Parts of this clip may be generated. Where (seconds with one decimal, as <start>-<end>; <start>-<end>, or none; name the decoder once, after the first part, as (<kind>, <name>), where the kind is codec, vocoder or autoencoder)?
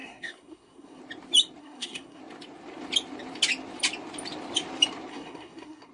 0.0-1.0 (codec, SNAC); 1.6-2.2; 5.1-5.9